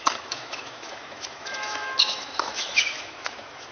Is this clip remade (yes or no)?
yes